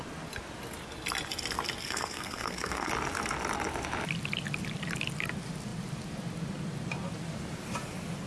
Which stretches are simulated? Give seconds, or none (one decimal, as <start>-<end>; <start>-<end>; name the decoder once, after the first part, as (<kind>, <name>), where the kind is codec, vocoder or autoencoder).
1.8-2.9 (codec, SNAC)